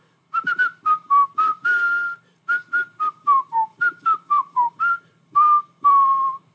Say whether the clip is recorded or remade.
remade